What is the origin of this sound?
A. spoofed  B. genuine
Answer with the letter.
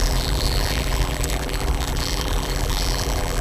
A